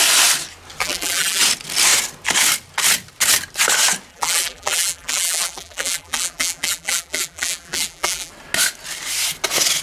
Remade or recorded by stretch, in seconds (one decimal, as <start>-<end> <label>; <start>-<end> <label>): 0.0-0.8 recorded; 0.8-1.4 remade; 1.4-4.1 recorded; 4.1-8.3 remade; 8.3-9.8 recorded

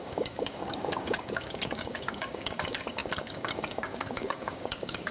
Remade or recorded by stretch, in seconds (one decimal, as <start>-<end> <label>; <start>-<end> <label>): 0.0-5.1 remade